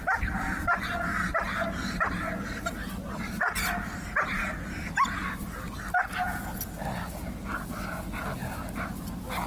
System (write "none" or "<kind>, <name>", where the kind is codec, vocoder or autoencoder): none